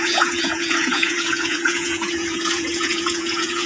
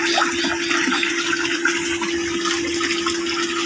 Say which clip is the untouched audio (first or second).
second